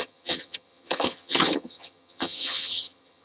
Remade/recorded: remade